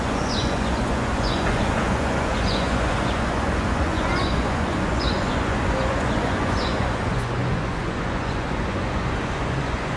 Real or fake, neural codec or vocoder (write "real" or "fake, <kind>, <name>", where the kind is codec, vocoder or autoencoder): fake, vocoder, Vocos